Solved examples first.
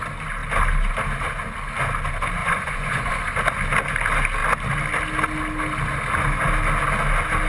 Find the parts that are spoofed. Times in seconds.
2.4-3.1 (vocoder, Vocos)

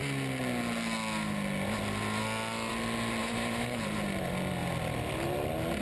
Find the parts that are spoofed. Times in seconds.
3.2-3.8 (autoencoder, DAC-VAE)

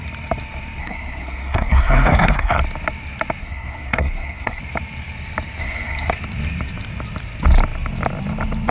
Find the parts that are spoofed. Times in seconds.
0.8-2.6 (codec, SNAC); 3.4-4.6; 5.6-6.1

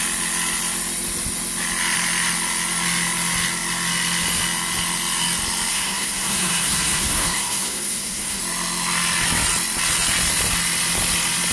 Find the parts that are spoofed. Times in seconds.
5.7-8.4 (codec, SNAC)

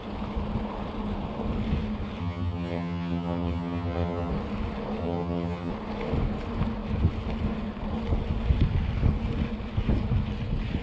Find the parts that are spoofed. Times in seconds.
2.2-4.3 (vocoder, HiFi-GAN); 5.0-5.7

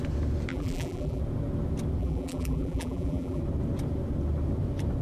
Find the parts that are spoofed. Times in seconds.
0.5-1.2 (vocoder, BigVGAN v2); 2.0-3.4

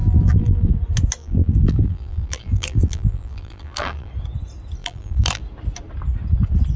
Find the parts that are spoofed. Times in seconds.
0.0-0.7 (vocoder, BigVGAN v2); 1.2-4.1; 4.8-5.4

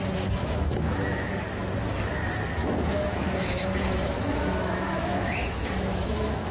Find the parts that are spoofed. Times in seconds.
0.4-1.3 (autoencoder, DAC-VAE); 2.6-6.5